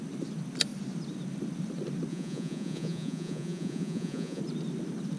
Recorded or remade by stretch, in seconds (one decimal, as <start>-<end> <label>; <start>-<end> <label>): 0.0-2.1 recorded; 2.1-4.4 remade; 4.4-5.2 recorded